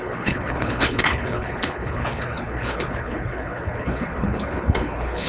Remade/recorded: remade